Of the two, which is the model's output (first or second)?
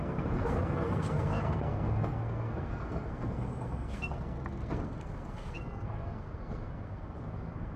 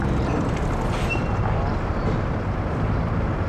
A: first